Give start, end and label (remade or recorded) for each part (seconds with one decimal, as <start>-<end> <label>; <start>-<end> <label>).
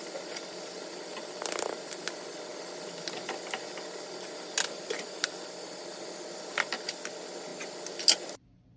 0.0-8.8 recorded